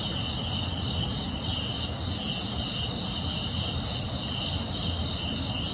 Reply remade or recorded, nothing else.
recorded